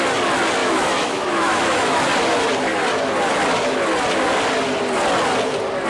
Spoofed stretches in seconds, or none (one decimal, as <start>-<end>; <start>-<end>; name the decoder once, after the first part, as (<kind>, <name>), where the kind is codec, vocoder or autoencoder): 0.6-2.1 (autoencoder, DAC-VAE)